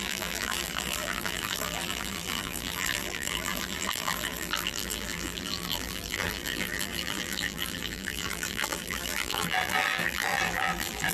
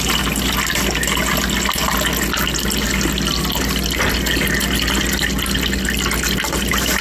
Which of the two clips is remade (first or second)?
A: first